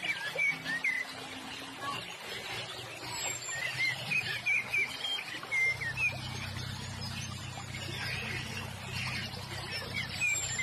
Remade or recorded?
recorded